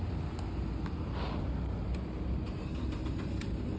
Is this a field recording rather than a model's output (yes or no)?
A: yes